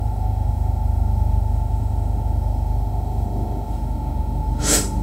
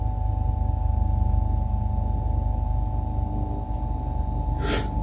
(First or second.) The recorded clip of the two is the second